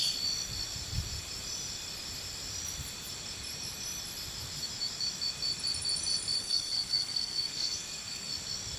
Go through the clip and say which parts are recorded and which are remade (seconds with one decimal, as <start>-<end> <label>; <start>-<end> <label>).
0.0-6.4 recorded; 6.4-8.3 remade; 8.3-8.8 recorded